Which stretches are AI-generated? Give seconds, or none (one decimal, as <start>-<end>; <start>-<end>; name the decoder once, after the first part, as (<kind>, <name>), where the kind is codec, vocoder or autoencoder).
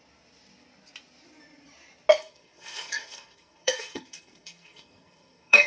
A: 2.2-5.7 (codec, SNAC)